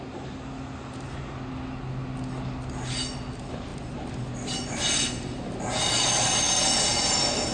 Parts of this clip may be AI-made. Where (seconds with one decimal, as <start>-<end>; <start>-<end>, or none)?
none